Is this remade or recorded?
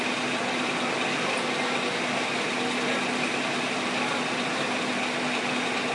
recorded